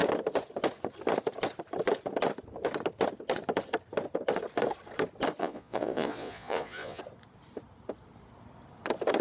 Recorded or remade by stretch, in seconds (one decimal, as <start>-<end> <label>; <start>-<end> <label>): 0.0-5.4 recorded; 5.4-7.0 remade; 7.0-9.2 recorded